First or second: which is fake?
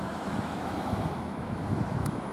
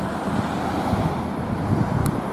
first